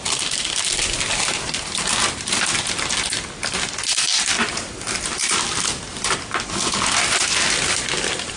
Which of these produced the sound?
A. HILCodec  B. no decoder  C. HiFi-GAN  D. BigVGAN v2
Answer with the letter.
B